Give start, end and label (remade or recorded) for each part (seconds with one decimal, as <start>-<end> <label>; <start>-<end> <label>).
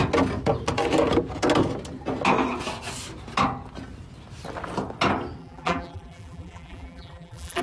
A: 0.0-5.4 recorded; 5.4-7.6 remade